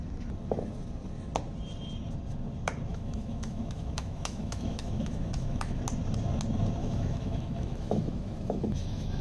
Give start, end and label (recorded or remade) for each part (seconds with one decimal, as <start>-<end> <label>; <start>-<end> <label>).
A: 0.0-2.9 recorded; 2.9-5.8 remade; 5.8-6.8 recorded; 6.8-9.2 remade